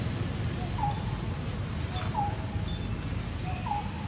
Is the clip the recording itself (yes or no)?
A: yes